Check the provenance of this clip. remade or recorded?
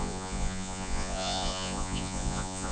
remade